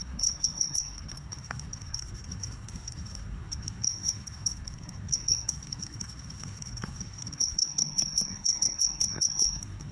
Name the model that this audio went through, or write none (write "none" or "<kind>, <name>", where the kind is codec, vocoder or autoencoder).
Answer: codec, SNAC